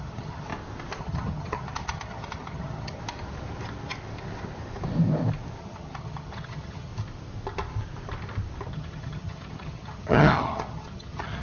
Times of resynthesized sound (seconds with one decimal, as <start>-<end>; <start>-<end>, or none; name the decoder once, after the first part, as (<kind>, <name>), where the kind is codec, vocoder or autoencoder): 0.0-0.5 (vocoder, HiFi-GAN); 1.0-3.0; 5.6-6.9; 8.7-11.4